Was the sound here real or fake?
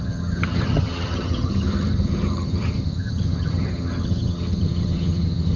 fake